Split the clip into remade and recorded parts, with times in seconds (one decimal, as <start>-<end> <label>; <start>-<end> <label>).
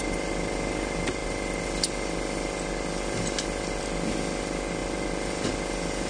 0.0-4.8 recorded; 4.8-5.5 remade; 5.5-6.1 recorded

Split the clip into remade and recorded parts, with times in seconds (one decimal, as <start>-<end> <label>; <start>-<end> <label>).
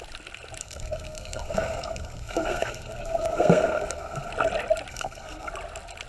0.0-0.6 recorded; 0.6-4.3 remade; 4.3-4.9 recorded; 4.9-5.5 remade; 5.5-6.1 recorded